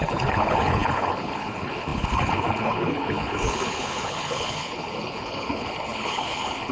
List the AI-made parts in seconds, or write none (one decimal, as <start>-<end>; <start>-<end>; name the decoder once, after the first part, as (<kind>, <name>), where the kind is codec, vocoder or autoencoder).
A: 0.0-6.7 (codec, HILCodec)